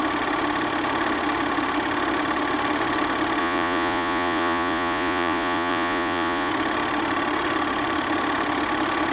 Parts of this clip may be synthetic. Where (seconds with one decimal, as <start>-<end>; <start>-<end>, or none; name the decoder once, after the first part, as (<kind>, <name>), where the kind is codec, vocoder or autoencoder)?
3.4-6.5 (vocoder, Vocos)